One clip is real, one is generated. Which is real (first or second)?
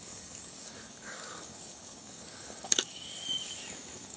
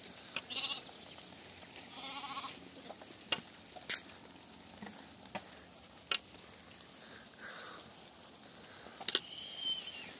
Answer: second